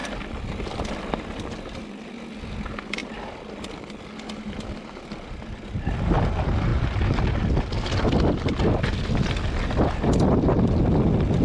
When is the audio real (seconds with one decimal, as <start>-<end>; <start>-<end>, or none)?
0.0-11.4